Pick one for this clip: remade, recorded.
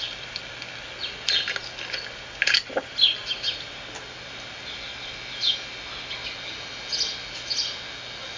recorded